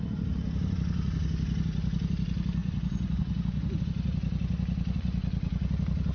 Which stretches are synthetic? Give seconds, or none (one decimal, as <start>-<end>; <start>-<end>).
2.6-3.8